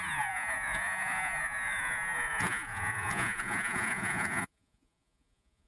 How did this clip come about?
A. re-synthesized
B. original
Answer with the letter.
A